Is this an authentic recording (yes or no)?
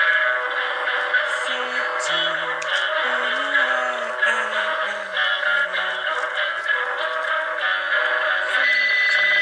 yes